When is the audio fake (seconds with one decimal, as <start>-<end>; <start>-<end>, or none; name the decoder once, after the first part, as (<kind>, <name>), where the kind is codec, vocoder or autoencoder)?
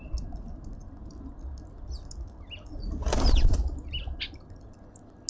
none